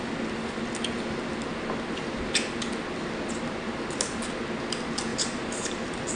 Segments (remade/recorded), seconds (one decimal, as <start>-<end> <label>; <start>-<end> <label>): 0.0-5.1 recorded; 5.1-5.8 remade; 5.8-6.2 recorded